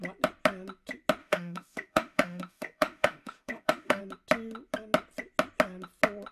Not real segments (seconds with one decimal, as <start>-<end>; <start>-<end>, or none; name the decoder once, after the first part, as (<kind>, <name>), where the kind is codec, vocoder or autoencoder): 1.2-4.0 (autoencoder, DAC-VAE)